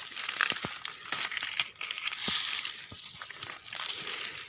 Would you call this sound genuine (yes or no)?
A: yes